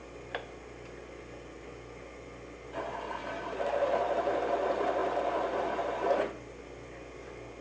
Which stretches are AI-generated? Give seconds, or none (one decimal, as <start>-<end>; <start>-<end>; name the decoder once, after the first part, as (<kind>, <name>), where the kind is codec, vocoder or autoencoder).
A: none